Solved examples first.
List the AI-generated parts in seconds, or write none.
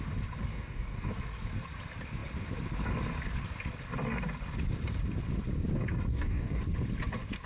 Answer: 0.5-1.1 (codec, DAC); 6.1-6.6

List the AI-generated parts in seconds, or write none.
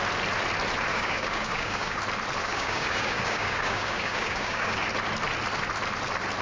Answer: 0.9-2.0 (codec, DAC); 2.4-4.8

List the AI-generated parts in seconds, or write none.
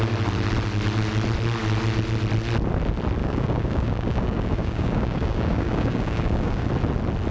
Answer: 3.2-6.7 (codec, DAC)